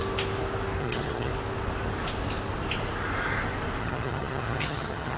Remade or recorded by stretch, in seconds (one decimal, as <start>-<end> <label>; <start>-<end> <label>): 0.0-0.8 recorded; 0.8-1.3 remade; 1.3-3.8 recorded; 3.8-5.2 remade